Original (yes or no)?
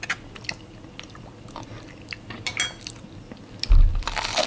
yes